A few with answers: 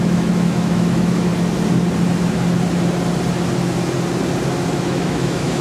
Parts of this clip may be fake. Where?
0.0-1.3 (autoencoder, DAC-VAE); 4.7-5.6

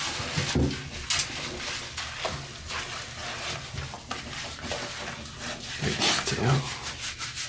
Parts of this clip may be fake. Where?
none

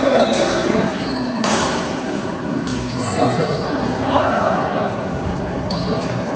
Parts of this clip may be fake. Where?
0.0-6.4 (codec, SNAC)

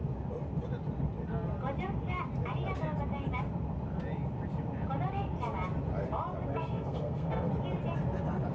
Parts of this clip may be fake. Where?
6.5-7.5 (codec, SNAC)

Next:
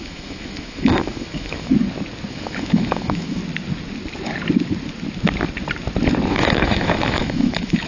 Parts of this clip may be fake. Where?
0.0-1.7 (autoencoder, DAC-VAE); 2.3-3.4; 6.3-7.9

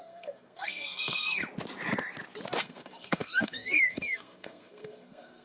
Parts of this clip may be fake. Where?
0.0-1.4 (codec, SNAC); 2.6-5.4